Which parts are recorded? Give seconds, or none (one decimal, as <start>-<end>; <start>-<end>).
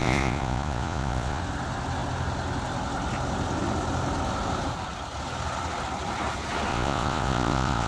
1.4-6.7